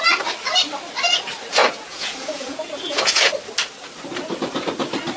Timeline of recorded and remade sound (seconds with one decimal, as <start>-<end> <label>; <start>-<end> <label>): 0.0-1.6 recorded; 1.6-3.3 remade; 3.3-5.2 recorded